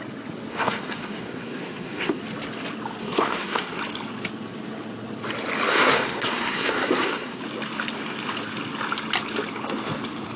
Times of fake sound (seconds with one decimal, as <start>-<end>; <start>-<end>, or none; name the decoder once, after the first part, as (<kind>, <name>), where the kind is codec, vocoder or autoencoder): 0.5-2.2 (codec, SNAC); 3.0-3.8; 5.7-7.4

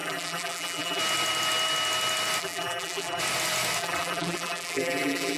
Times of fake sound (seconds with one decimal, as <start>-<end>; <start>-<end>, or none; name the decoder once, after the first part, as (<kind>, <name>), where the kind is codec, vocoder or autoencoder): 0.0-1.0 (vocoder, BigVGAN v2); 2.4-3.2; 3.8-5.4

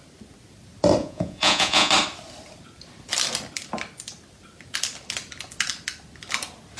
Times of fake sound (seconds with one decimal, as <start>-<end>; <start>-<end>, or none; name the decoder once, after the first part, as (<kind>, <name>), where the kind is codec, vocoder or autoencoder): 1.0-1.9 (vocoder, Vocos)

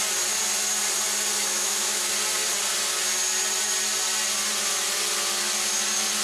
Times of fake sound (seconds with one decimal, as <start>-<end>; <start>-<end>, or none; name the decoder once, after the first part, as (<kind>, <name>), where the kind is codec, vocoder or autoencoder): 1.4-2.1 (autoencoder, DAC-VAE)

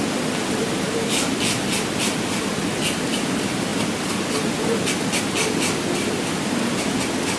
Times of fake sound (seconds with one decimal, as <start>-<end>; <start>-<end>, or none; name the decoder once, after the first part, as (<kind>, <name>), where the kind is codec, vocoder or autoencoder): none

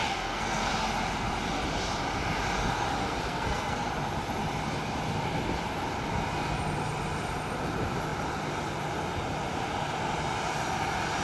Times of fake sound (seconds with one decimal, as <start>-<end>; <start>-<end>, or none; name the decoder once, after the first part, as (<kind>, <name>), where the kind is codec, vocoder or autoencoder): 0.0-0.7 (codec, SNAC); 3.0-3.9

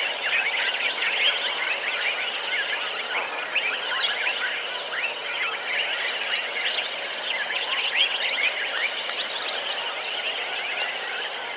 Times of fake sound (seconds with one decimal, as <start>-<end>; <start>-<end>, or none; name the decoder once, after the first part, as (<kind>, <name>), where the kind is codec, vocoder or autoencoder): none